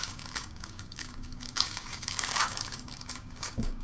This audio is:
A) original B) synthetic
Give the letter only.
B